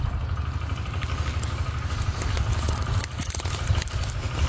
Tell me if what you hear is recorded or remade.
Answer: recorded